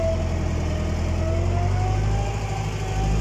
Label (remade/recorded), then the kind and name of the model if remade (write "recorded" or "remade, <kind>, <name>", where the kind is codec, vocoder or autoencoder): recorded